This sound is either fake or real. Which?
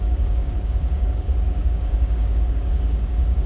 fake